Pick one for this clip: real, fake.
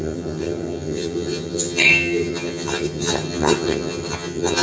fake